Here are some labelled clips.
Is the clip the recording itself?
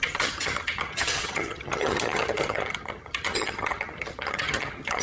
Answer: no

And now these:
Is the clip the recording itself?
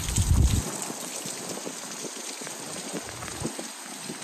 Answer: yes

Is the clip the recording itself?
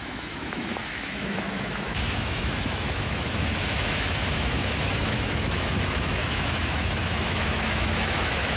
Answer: no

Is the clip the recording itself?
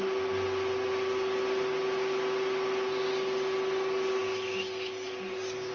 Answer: yes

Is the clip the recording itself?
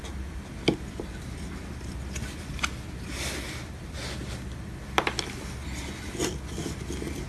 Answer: yes